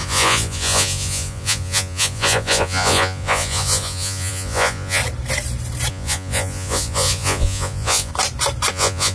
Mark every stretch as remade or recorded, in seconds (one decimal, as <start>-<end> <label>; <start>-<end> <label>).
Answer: 0.0-5.0 remade; 5.0-5.9 recorded; 5.9-8.1 remade; 8.1-8.7 recorded; 8.7-9.1 remade